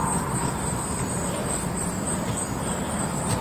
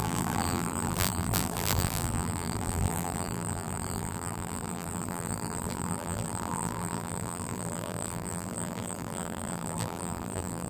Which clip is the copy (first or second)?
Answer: second